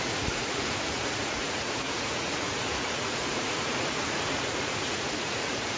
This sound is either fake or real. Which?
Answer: fake